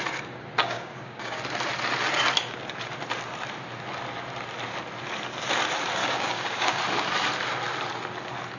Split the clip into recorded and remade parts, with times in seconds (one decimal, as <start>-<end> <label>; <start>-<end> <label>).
0.0-0.6 recorded; 0.6-1.4 remade; 1.4-6.0 recorded; 6.0-6.8 remade; 6.8-8.6 recorded